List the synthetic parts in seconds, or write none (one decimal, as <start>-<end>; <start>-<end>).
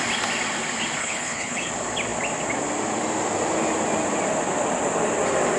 1.0-1.7